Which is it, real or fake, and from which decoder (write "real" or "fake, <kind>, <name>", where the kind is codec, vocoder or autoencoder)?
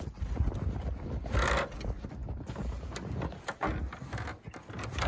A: real